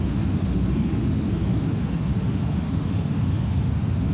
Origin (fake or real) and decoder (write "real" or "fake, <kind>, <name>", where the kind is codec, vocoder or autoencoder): fake, autoencoder, DAC-VAE